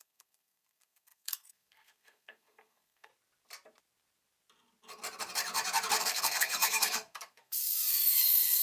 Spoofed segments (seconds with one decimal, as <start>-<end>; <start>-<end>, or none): 0.0-3.1; 6.0-8.6